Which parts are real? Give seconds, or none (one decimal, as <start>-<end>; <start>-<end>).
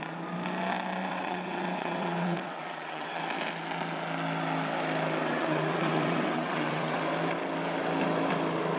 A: 0.0-1.0; 3.2-5.2; 7.0-8.8